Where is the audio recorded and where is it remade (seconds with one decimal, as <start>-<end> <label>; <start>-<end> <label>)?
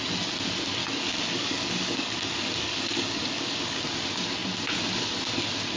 0.0-0.8 recorded; 0.8-3.8 remade; 3.8-5.8 recorded